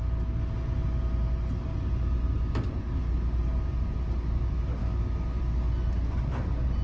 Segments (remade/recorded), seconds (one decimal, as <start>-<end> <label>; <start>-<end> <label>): 0.0-4.8 recorded; 4.8-5.4 remade; 5.4-6.8 recorded